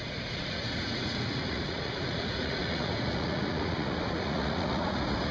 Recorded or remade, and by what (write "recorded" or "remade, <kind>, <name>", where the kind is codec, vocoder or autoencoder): remade, vocoder, Vocos